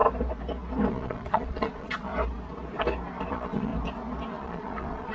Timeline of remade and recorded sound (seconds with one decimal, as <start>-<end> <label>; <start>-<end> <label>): 0.0-0.9 recorded; 0.9-2.1 remade; 2.1-3.3 recorded; 3.3-3.7 remade; 3.7-4.3 recorded; 4.3-5.1 remade